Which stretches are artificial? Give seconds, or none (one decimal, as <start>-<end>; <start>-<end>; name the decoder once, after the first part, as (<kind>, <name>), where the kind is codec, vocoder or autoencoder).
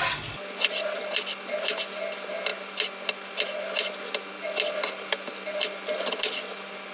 none